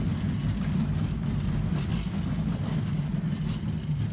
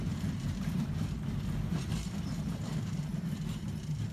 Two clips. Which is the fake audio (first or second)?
second